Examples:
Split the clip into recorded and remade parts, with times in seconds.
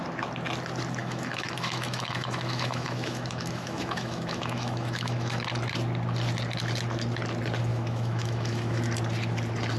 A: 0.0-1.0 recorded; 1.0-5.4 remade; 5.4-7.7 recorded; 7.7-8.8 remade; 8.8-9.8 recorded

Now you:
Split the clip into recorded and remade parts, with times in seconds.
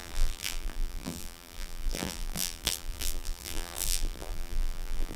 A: 0.0-5.2 remade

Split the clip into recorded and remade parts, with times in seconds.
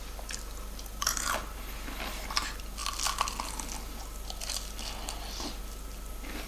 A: 0.0-6.5 recorded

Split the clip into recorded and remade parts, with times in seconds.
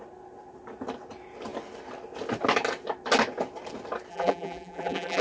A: 0.0-4.1 recorded; 4.1-5.2 remade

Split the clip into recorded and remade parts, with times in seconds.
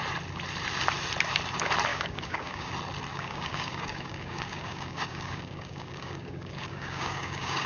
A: 0.0-1.9 recorded; 1.9-2.7 remade; 2.7-3.1 recorded; 3.1-7.7 remade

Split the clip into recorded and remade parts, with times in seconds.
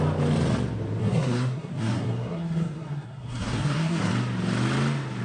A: 0.0-1.0 recorded; 1.0-4.1 remade; 4.1-5.2 recorded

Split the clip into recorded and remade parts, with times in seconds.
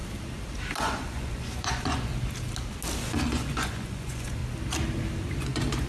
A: 0.0-0.8 recorded; 0.8-2.1 remade; 2.1-3.0 recorded; 3.0-4.4 remade; 4.4-5.4 recorded; 5.4-5.9 remade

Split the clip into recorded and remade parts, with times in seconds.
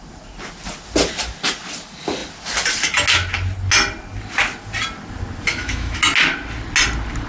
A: 0.0-5.5 recorded; 5.5-6.0 remade; 6.0-7.3 recorded